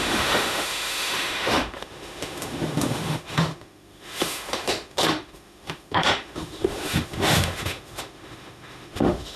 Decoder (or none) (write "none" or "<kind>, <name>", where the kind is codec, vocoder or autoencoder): autoencoder, DAC-VAE